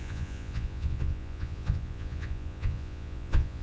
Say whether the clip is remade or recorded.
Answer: remade